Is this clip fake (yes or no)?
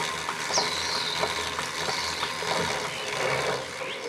no